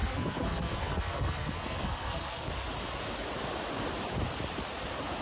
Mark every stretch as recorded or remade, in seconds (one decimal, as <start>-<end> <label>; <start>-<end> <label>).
0.0-2.5 remade; 2.5-5.2 recorded